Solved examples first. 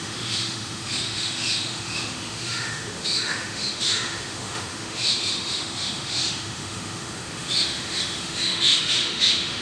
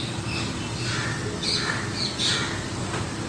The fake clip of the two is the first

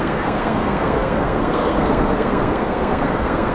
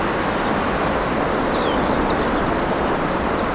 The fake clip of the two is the first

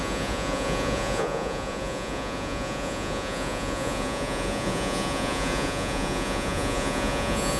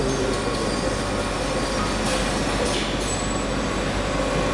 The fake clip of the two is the first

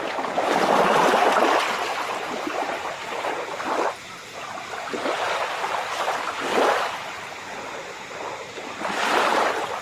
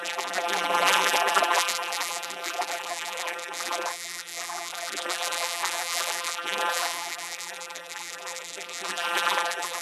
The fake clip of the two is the second